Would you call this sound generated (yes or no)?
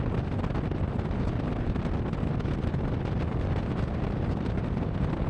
no